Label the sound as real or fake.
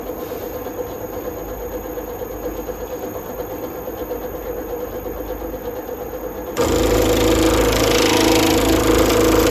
real